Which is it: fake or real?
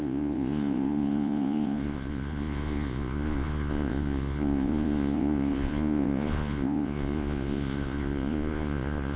fake